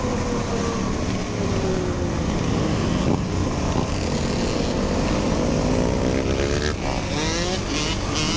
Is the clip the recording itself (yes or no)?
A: yes